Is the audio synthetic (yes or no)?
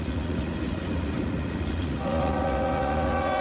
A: yes